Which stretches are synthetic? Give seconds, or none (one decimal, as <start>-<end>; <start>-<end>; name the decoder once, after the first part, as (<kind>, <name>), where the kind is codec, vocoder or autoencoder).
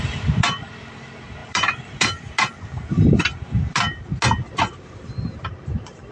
0.0-4.0 (vocoder, BigVGAN v2); 4.6-6.1